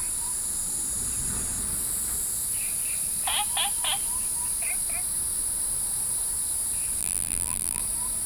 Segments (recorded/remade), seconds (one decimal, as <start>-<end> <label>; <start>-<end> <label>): 0.0-7.0 recorded; 7.0-7.8 remade; 7.8-8.3 recorded